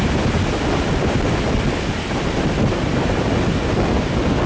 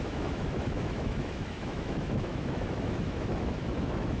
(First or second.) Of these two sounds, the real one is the first